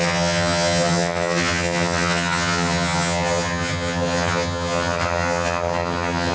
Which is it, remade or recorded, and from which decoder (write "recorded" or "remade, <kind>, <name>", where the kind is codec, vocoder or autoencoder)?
remade, vocoder, HiFi-GAN